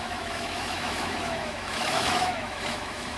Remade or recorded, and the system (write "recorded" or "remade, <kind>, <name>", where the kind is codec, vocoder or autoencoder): remade, autoencoder, DAC-VAE